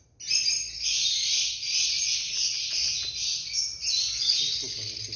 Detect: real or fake real